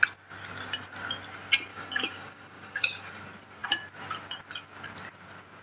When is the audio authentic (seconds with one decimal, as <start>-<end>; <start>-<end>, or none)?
0.0-1.7; 3.2-5.6